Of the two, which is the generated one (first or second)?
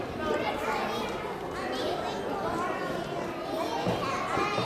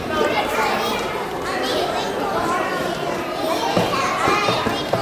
second